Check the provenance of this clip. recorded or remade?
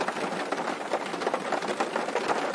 recorded